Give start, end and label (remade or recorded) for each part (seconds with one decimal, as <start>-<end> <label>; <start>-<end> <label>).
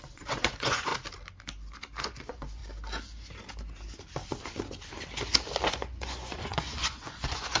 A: 0.0-0.9 remade; 0.9-2.0 recorded; 2.0-2.6 remade; 2.6-5.7 recorded; 5.7-7.6 remade